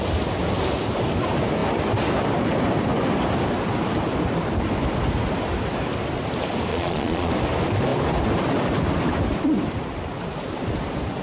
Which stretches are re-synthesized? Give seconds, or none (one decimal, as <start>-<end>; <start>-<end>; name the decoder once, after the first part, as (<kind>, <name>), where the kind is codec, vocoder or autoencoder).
6.7-7.3 (vocoder, Vocos)